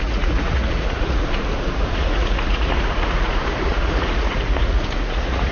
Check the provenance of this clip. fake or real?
fake